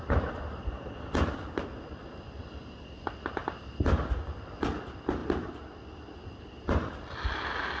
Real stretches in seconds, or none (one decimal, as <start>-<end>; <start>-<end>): 0.0-7.8